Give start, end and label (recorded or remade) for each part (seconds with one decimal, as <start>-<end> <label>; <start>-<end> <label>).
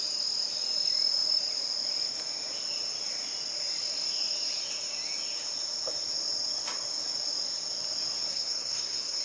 0.0-8.3 recorded; 8.3-9.2 remade